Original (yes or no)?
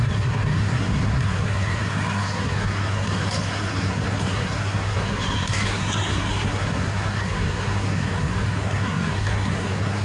no